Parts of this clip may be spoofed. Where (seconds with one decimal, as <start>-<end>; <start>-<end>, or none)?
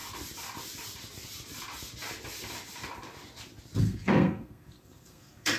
3.8-5.6